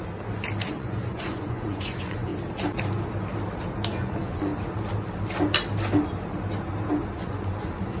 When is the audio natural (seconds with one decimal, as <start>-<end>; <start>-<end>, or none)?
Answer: 0.0-0.7; 2.3-3.9; 4.5-7.1